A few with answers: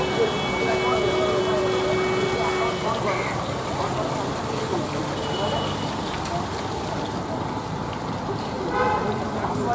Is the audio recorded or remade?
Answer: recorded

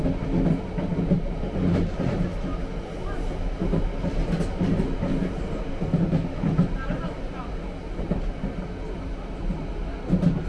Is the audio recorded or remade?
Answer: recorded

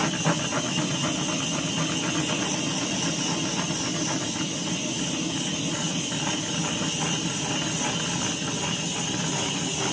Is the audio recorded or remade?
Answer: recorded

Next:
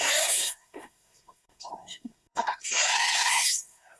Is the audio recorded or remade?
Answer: remade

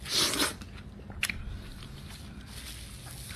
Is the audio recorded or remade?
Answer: recorded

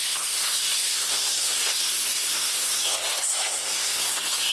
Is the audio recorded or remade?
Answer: remade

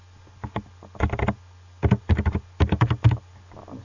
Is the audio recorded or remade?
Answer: recorded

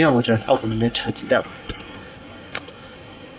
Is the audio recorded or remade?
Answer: remade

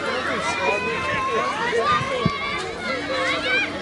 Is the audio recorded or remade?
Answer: recorded